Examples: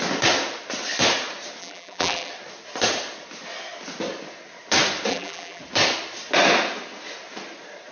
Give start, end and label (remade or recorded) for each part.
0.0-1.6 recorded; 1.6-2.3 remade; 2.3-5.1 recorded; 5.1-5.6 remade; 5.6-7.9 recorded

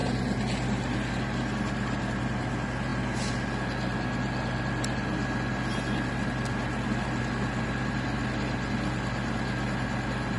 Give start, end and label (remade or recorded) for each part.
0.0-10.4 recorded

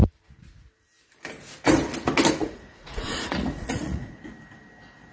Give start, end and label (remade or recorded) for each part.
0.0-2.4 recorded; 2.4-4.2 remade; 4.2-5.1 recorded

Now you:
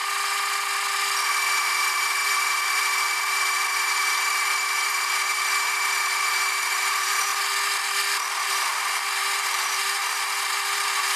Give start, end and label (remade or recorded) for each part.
0.0-1.6 recorded; 1.6-7.3 remade; 7.3-8.5 recorded; 8.5-11.2 remade

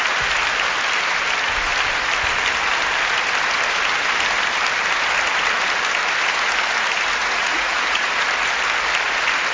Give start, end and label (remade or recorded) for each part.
0.0-7.2 recorded; 7.2-8.1 remade; 8.1-9.5 recorded

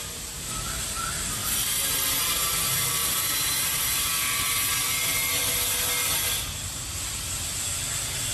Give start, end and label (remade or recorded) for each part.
0.0-3.0 recorded; 3.0-4.0 remade; 4.0-8.3 recorded

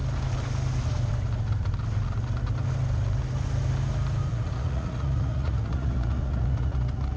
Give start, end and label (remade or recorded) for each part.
0.0-4.3 recorded; 4.3-7.2 remade